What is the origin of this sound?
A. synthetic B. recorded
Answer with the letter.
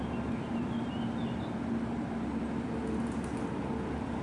B